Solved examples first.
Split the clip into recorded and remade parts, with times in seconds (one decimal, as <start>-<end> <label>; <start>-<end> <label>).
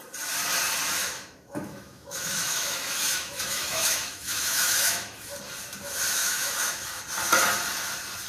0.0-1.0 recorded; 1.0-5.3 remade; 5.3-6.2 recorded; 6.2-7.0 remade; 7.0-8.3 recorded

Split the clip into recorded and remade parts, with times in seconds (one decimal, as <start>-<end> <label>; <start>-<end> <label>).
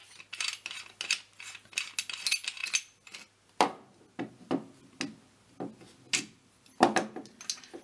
0.0-7.8 recorded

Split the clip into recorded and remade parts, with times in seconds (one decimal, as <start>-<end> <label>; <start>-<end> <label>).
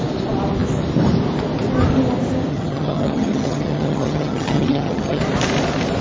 0.0-2.5 recorded; 2.5-5.2 remade; 5.2-6.0 recorded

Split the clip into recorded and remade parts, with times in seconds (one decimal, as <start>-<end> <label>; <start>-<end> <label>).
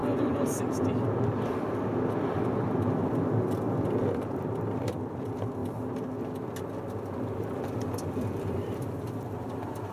0.0-5.6 remade; 5.6-7.2 recorded; 7.2-9.9 remade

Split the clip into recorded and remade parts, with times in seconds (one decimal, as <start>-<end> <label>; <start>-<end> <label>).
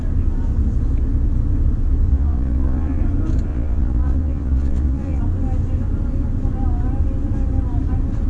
0.0-2.1 recorded; 2.1-3.0 remade; 3.0-3.5 recorded; 3.5-5.2 remade; 5.2-8.3 recorded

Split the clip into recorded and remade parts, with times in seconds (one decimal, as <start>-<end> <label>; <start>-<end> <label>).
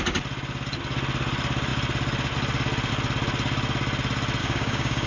0.0-4.4 recorded; 4.4-5.1 remade